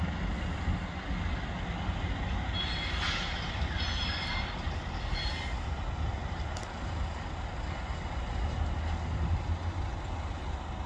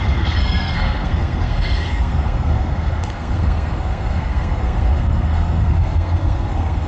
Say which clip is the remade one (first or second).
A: second